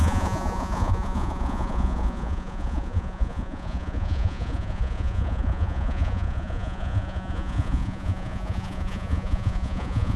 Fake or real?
fake